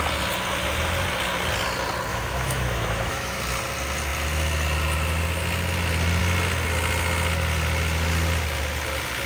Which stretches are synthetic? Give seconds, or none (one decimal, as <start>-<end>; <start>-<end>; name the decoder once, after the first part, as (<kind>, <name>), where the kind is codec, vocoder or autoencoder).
2.1-3.4 (autoencoder, DAC-VAE)